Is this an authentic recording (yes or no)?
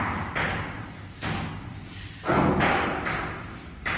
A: yes